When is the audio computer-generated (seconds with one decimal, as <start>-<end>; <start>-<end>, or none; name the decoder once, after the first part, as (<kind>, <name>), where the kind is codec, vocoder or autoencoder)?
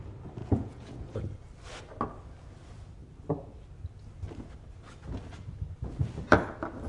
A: 0.4-1.2 (vocoder, Vocos)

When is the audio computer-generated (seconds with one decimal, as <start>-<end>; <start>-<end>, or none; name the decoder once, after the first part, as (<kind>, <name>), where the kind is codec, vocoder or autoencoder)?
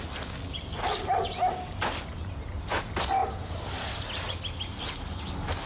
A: none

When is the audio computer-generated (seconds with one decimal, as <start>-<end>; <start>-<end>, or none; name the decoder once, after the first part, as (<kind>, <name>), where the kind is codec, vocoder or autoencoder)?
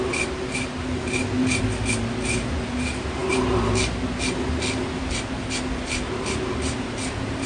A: none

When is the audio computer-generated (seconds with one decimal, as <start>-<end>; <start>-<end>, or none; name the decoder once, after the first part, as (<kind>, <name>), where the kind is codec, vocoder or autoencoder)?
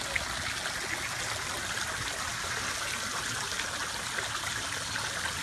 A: none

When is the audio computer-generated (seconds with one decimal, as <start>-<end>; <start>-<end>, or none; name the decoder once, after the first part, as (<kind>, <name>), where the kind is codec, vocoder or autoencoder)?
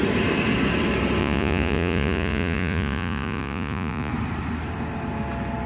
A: 1.2-4.1 (vocoder, Vocos)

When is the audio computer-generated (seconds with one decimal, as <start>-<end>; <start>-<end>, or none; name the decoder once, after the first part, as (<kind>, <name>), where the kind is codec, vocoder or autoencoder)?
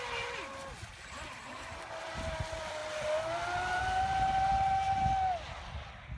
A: none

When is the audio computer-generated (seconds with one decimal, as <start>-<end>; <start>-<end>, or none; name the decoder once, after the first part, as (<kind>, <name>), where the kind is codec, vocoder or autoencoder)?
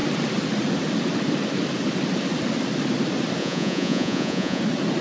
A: 3.4-4.6 (vocoder, Vocos)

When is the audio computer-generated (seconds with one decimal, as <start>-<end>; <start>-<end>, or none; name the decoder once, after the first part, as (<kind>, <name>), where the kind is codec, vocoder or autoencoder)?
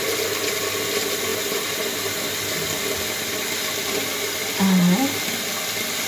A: none